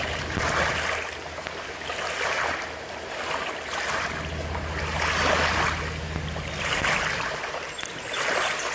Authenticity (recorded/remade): remade